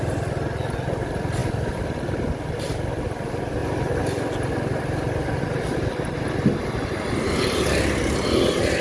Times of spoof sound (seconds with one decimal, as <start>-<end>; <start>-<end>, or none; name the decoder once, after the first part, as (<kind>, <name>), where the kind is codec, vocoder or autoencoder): none